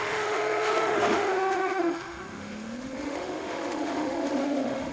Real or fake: fake